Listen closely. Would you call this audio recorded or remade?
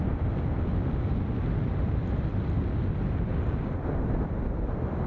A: recorded